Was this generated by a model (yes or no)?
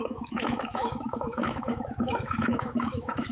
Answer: yes